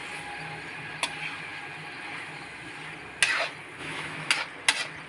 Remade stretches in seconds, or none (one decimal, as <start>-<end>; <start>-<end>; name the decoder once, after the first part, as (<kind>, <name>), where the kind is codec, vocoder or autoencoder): 3.8-4.3 (autoencoder, DAC-VAE)